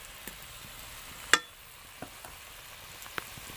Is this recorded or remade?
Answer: recorded